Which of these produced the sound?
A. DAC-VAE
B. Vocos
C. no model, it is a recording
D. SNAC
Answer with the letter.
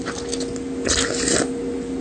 C